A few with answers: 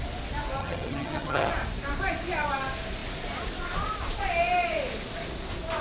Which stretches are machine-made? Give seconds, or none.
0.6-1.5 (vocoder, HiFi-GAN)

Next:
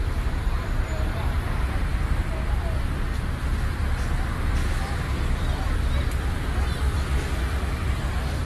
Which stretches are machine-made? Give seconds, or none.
0.0-8.5 (vocoder, BigVGAN v2)